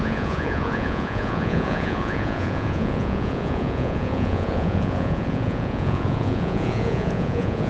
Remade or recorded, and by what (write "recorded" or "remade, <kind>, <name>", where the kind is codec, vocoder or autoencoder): remade, vocoder, Vocos